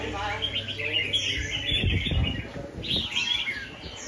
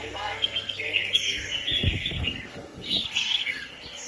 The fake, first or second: second